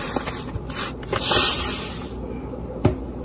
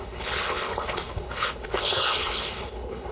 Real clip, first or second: first